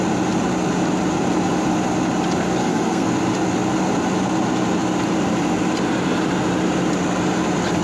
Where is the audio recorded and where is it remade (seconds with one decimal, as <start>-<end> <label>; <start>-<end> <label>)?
0.0-2.6 recorded; 2.6-3.1 remade; 3.1-7.8 recorded